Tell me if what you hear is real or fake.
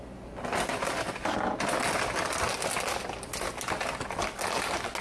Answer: real